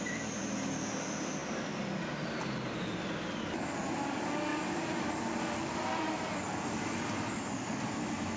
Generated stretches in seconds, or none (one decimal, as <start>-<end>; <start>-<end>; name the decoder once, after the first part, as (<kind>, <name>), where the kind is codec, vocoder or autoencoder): 4.5-5.4 (vocoder, BigVGAN v2)